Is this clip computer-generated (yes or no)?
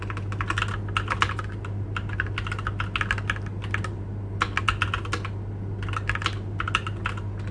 no